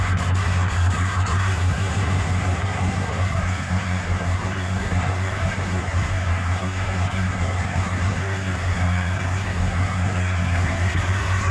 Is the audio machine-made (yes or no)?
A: yes